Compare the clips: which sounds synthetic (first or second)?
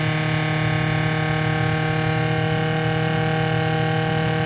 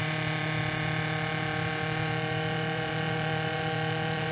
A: second